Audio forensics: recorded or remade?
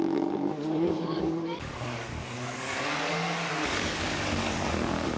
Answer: remade